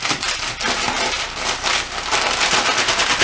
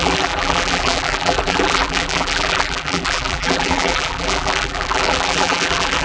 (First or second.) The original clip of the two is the first